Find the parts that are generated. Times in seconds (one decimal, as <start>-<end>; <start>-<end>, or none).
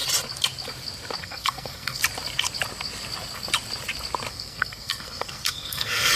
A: 1.2-2.0; 4.3-6.2